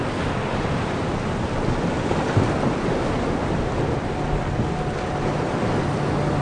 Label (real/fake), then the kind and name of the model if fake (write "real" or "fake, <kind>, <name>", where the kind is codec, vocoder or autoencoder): real